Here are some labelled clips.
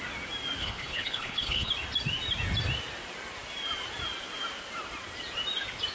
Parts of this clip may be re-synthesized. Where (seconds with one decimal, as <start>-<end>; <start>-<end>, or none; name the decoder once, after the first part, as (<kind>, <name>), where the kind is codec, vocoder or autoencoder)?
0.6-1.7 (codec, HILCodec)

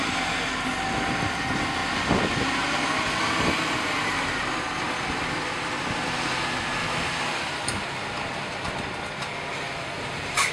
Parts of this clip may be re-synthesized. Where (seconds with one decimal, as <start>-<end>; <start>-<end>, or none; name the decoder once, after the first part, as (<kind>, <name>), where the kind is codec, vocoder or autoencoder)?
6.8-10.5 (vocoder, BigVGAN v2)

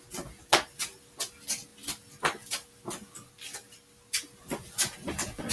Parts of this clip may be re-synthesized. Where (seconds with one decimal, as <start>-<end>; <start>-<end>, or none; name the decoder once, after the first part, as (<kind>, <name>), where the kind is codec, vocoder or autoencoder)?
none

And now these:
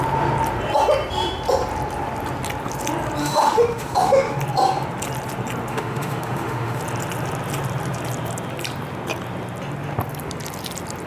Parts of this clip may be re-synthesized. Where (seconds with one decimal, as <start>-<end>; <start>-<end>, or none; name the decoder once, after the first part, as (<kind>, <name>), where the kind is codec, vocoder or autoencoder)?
3.2-4.4 (autoencoder, DAC-VAE); 5.7-6.8

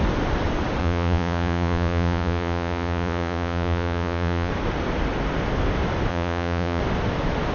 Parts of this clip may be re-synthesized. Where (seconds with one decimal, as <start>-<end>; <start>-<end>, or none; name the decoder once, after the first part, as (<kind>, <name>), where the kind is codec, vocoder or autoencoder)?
0.8-4.5 (vocoder, Vocos); 6.1-6.8